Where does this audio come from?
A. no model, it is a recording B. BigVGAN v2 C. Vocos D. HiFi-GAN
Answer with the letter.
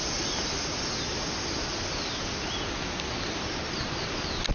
A